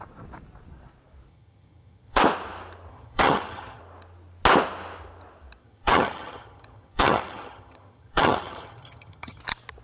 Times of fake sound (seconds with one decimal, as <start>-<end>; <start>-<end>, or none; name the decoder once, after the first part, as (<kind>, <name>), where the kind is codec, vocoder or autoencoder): 1.3-2.2 (vocoder, HiFi-GAN); 2.9-3.8; 5.6-9.4